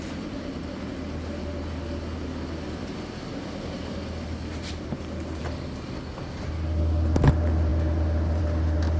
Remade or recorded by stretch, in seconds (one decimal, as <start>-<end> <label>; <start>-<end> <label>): 0.0-9.0 recorded